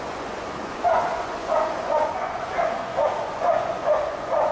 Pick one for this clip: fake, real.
fake